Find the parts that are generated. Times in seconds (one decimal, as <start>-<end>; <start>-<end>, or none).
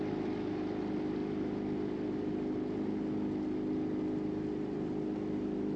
none